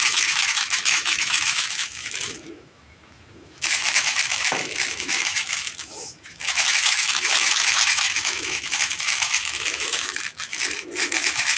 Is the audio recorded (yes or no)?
no